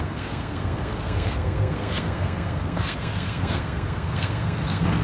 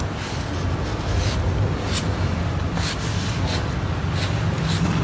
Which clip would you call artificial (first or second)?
first